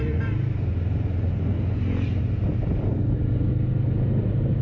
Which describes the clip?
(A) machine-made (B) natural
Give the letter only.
B